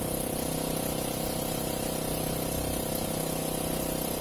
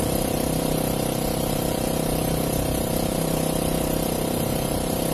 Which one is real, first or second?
first